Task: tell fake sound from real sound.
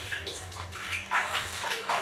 fake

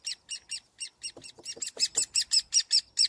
real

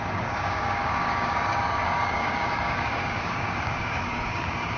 fake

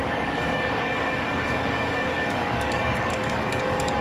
fake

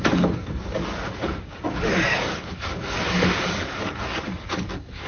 fake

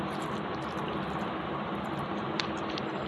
real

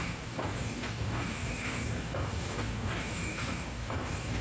fake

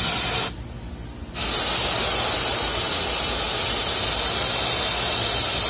real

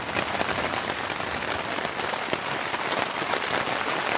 real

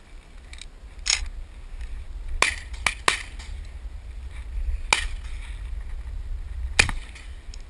real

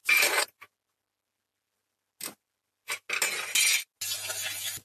real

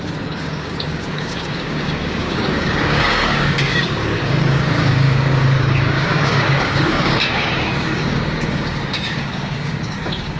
fake